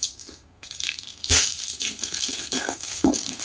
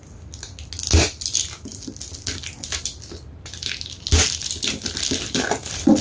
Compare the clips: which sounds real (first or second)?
second